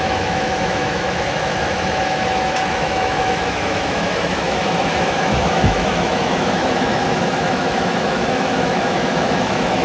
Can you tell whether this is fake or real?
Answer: fake